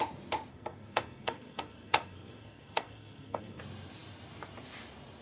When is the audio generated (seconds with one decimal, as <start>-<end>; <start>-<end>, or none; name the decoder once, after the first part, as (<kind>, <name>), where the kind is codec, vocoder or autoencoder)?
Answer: 0.5-3.6 (codec, SNAC)